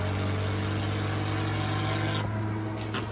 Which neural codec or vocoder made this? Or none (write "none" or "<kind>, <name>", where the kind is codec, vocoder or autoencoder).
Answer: none